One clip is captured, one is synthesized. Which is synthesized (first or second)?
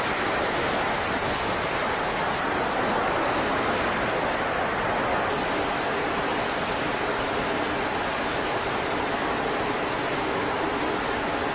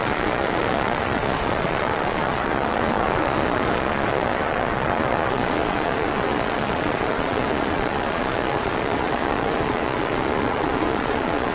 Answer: second